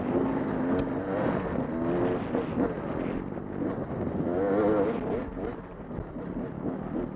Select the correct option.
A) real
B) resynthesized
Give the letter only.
A